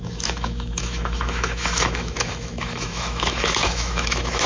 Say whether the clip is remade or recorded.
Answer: remade